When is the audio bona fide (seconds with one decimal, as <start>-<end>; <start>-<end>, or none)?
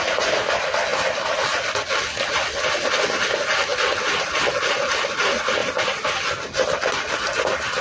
0.0-7.8